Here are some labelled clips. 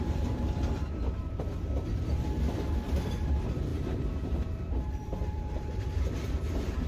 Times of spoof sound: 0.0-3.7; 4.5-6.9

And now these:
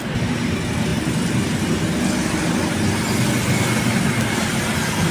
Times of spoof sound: none

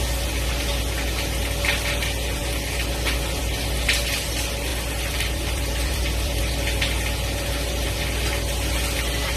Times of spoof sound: 4.7-6.4

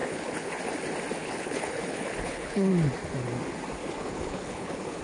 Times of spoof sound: 0.0-0.6; 1.2-2.7; 3.8-5.0

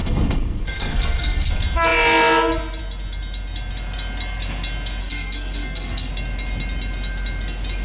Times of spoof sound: 0.0-1.5; 5.0-6.1

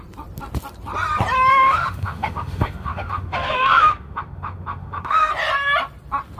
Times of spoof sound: 1.5-5.3

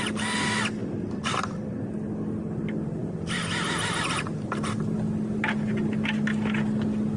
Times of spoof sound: 0.8-1.3; 3.0-4.3

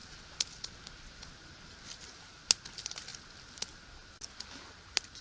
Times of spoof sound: none